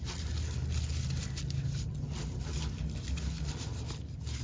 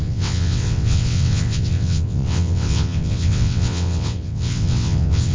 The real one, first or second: first